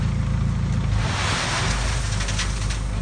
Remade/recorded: recorded